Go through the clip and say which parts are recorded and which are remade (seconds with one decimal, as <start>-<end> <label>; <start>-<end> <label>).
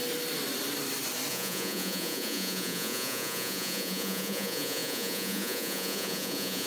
0.0-1.3 recorded; 1.3-6.7 remade